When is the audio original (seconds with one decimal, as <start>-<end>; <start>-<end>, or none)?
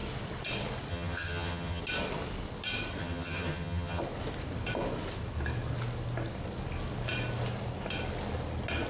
0.0-0.9; 1.8-3.0; 4.0-8.9